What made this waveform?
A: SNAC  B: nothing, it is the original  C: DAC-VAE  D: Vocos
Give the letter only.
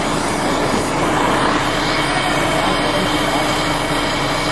B